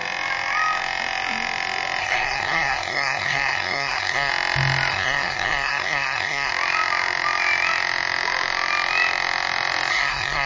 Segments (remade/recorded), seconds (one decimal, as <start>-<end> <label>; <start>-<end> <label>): 0.0-2.0 recorded; 2.0-4.3 remade; 4.3-4.9 recorded; 4.9-6.5 remade; 6.5-9.9 recorded; 9.9-10.5 remade